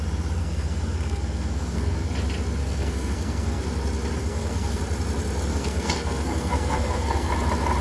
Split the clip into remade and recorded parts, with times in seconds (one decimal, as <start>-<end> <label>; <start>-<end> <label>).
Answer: 0.0-0.4 recorded; 0.4-2.1 remade; 2.1-2.6 recorded; 2.6-3.6 remade; 3.6-4.2 recorded; 4.2-4.8 remade; 4.8-5.5 recorded; 5.5-7.3 remade; 7.3-7.8 recorded